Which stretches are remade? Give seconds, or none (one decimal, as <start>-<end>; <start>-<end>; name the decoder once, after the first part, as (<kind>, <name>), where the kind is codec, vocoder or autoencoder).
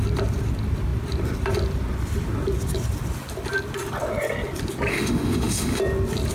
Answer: 4.9-5.8 (autoencoder, DAC-VAE)